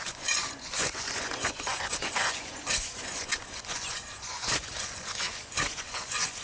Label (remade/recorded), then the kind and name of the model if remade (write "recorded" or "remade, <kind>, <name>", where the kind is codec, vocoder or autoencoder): remade, vocoder, Vocos